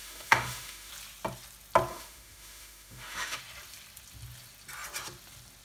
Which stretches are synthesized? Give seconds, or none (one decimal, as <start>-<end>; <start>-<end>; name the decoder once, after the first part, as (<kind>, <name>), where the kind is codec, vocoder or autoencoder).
0.0-0.9 (autoencoder, DAC-VAE); 1.9-3.4